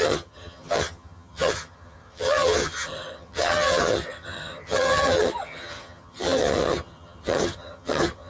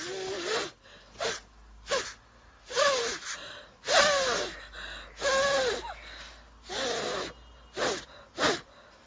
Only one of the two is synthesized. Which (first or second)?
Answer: first